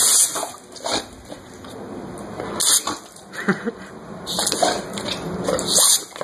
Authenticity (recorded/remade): recorded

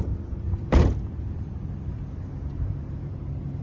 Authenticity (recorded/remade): remade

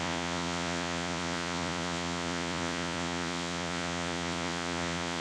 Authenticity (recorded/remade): remade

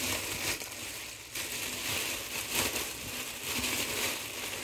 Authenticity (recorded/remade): recorded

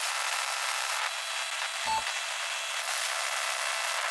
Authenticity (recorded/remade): recorded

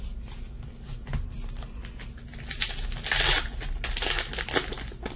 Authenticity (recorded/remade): recorded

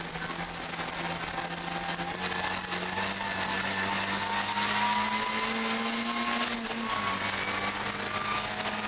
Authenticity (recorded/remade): recorded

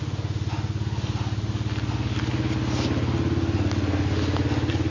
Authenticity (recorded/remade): recorded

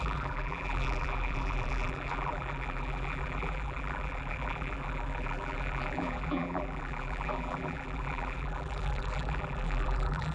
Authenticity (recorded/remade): remade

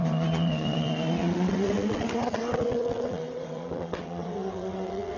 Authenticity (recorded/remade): remade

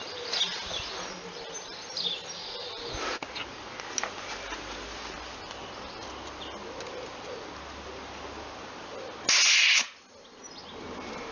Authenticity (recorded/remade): recorded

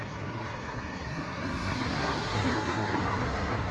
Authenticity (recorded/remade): remade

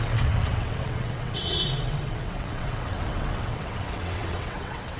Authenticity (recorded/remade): remade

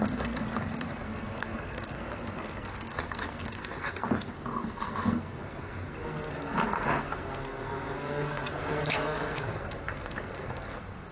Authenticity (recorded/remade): remade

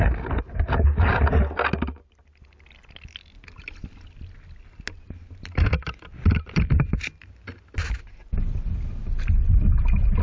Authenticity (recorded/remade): recorded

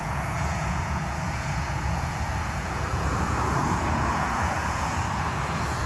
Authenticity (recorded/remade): remade